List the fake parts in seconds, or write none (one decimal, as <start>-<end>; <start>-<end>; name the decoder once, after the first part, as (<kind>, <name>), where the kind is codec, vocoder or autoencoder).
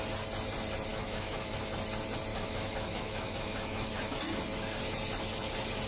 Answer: 0.9-1.7 (autoencoder, DAC-VAE); 2.3-4.2